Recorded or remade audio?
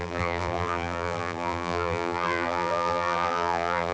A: remade